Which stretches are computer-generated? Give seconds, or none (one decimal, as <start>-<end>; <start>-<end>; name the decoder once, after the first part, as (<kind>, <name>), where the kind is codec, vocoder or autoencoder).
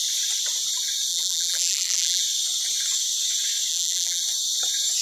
1.1-2.2 (vocoder, BigVGAN v2); 3.7-4.2